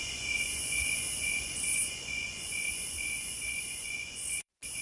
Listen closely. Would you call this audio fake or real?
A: fake